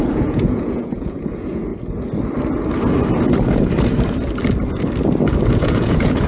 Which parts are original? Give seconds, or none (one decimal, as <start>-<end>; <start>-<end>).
1.7-5.5